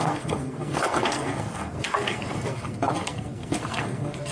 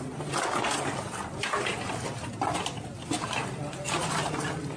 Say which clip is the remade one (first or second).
first